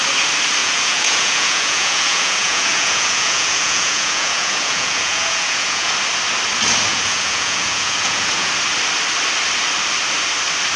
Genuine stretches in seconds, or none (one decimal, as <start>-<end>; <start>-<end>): 0.0-0.6; 5.9-6.9; 8.5-10.8